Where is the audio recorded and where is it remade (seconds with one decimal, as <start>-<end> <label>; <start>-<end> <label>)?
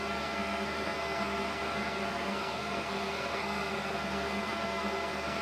0.0-5.4 remade